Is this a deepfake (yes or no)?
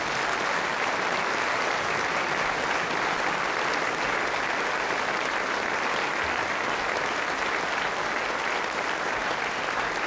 no